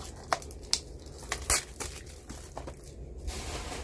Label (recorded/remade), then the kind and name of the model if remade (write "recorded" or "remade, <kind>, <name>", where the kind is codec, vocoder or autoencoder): recorded